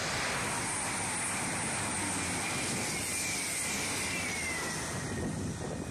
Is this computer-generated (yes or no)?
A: no